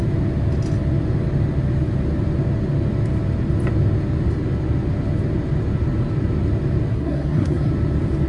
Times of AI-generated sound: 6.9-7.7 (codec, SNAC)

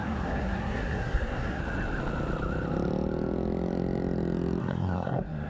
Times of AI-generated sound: 0.0-1.6 (codec, SNAC); 4.6-5.5

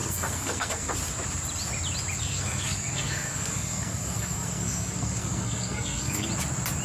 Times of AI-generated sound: 0.0-0.9 (codec, SNAC); 2.2-6.3

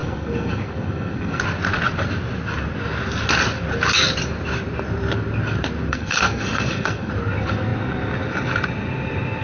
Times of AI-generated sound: 0.0-1.4 (codec, SNAC); 5.9-7.1

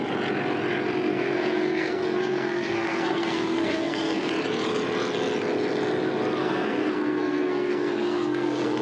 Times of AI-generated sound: 1.1-4.3 (codec, SNAC); 6.4-8.8

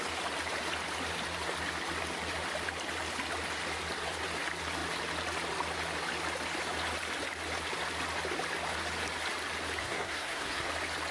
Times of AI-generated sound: 9.8-10.7 (codec, SNAC)